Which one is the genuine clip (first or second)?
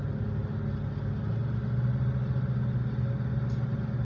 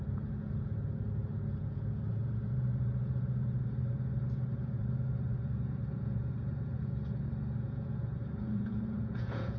first